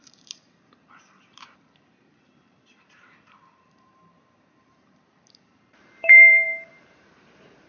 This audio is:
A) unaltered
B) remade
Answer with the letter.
B